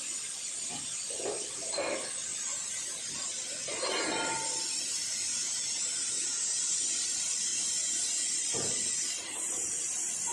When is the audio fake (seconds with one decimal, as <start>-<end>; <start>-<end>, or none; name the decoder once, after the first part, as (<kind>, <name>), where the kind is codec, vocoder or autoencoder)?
5.3-6.9 (vocoder, Vocos); 7.5-8.3